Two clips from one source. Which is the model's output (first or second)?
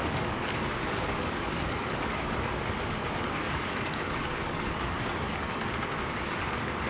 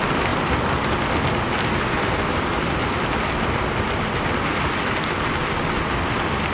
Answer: first